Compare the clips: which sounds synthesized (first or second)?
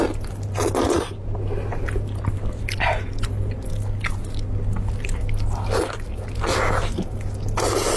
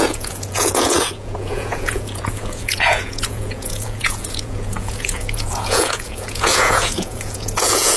second